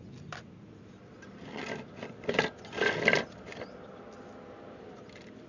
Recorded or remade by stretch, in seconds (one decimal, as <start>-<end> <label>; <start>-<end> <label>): 0.0-5.5 recorded

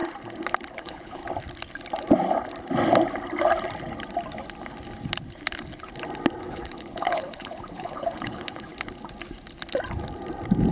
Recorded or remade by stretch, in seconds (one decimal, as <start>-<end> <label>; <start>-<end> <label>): 0.0-0.7 recorded; 0.7-1.2 remade; 1.2-6.4 recorded; 6.4-8.7 remade; 8.7-10.7 recorded

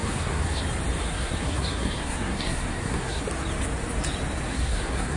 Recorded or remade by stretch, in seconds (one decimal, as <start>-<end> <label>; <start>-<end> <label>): 0.0-0.6 remade; 0.6-1.0 recorded; 1.0-3.2 remade; 3.2-4.5 recorded; 4.5-5.2 remade